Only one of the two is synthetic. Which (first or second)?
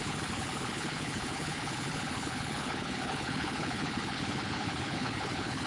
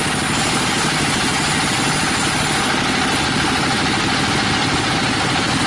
first